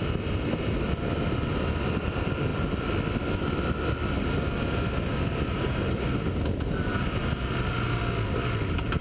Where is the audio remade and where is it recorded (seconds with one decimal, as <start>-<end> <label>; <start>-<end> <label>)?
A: 0.0-9.0 recorded